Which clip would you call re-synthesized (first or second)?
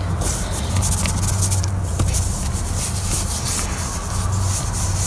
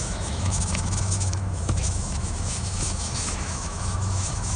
second